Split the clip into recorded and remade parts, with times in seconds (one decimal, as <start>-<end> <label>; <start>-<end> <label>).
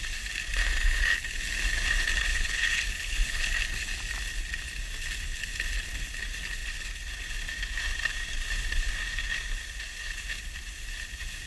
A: 0.0-2.3 recorded; 2.3-3.5 remade; 3.5-11.5 recorded